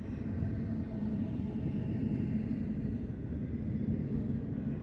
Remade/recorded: recorded